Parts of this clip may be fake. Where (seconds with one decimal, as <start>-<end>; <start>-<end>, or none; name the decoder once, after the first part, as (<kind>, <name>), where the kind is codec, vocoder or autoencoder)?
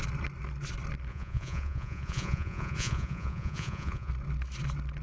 1.1-4.1 (vocoder, Vocos)